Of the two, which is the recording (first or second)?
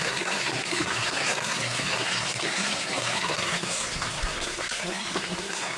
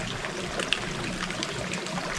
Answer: second